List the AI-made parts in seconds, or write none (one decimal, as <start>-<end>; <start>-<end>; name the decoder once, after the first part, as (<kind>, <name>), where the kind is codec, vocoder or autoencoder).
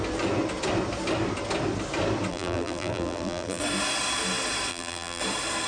2.3-3.6 (vocoder, BigVGAN v2); 4.7-5.2